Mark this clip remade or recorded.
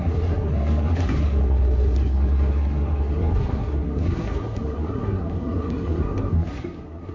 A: remade